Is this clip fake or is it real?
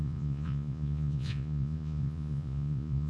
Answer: fake